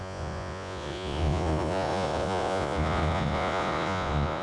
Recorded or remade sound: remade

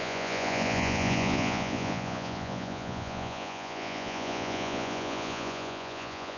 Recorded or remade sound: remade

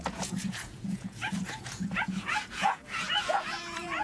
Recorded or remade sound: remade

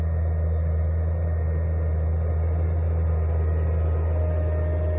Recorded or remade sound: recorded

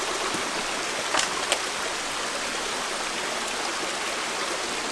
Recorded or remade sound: recorded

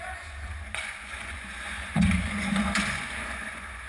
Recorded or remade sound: remade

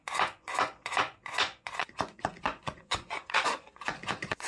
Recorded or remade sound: remade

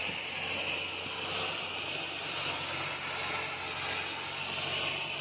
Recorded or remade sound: recorded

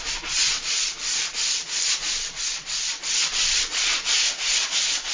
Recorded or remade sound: remade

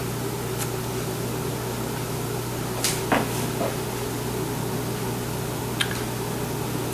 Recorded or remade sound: recorded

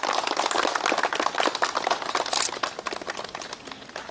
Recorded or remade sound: recorded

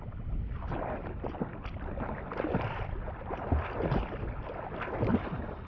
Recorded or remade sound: recorded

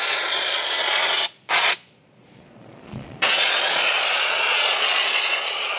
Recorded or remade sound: remade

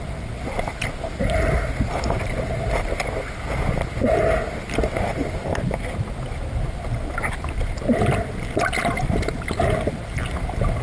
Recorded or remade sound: recorded